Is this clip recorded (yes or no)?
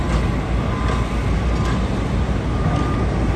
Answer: yes